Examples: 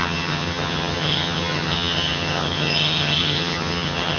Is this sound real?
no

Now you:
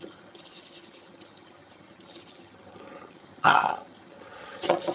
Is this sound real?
no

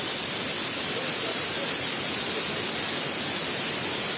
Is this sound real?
yes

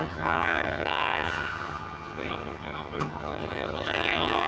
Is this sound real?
no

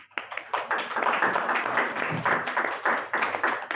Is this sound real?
yes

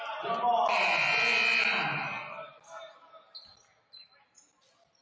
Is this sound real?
yes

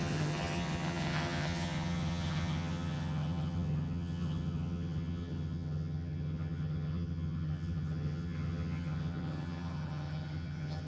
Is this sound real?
no